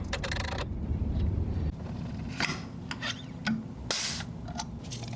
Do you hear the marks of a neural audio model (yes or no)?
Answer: no